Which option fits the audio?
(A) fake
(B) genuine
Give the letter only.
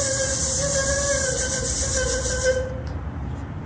B